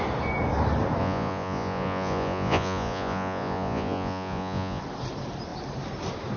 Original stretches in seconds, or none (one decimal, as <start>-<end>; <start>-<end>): 0.0-1.0; 4.8-6.4